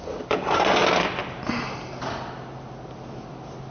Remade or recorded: recorded